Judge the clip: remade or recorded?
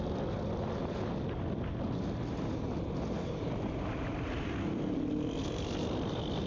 recorded